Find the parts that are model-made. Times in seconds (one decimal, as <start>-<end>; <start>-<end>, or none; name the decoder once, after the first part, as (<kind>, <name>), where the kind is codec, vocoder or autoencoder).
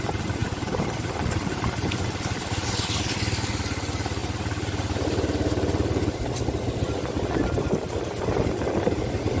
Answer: none